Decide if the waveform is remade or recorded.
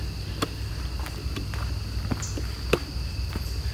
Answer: recorded